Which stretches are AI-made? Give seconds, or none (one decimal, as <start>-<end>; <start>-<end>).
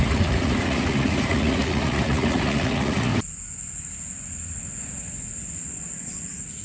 0.0-3.1; 4.2-6.6